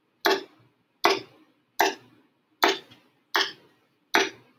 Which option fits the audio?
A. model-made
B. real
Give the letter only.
B